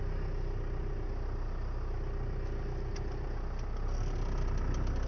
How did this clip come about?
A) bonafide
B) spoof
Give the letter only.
A